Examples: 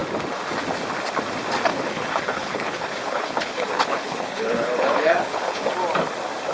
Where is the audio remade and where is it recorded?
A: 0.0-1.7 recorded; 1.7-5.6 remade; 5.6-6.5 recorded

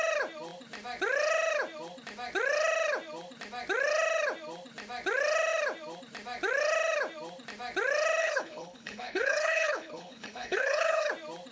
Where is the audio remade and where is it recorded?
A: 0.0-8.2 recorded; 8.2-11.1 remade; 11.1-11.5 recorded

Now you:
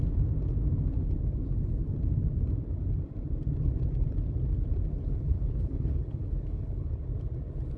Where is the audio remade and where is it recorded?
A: 0.0-5.0 recorded; 5.0-6.9 remade; 6.9-7.8 recorded